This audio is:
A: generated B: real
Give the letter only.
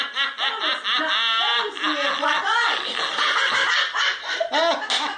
B